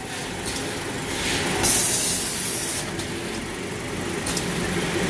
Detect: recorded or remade recorded